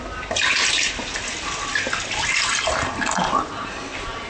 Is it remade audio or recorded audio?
recorded